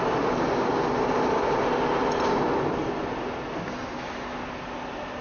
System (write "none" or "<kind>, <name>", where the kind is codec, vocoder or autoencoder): none